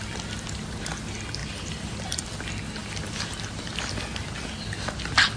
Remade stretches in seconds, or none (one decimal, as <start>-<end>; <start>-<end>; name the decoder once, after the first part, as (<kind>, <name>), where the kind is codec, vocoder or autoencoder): 1.4-2.2 (vocoder, BigVGAN v2); 2.8-3.7